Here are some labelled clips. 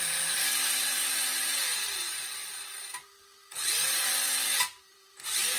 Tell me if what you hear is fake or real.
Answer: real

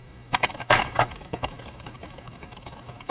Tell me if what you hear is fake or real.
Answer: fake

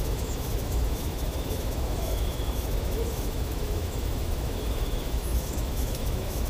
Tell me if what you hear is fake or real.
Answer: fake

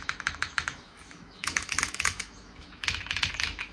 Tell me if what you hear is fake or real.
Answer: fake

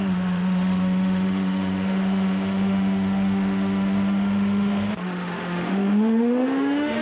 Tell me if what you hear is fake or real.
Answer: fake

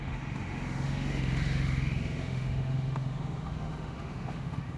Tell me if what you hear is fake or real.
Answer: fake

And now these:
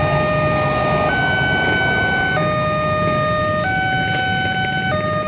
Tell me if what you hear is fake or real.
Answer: real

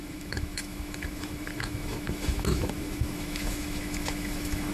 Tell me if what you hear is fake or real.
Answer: fake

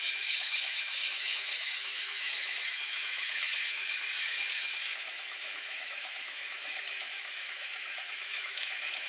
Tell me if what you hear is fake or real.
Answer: fake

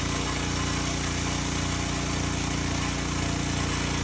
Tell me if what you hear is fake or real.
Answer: real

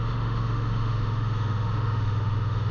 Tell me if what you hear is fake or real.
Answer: fake